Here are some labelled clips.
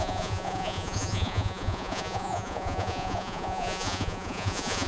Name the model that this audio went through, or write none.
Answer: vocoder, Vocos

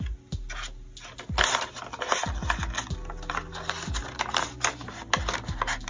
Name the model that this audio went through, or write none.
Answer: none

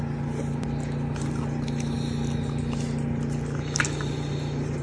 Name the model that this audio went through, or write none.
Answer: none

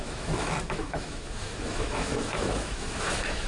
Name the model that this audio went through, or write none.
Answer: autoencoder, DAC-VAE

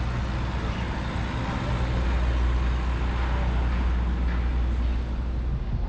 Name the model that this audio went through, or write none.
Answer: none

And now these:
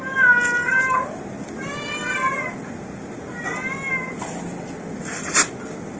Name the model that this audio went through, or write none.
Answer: none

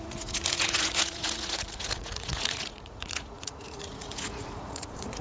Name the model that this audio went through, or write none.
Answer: vocoder, Vocos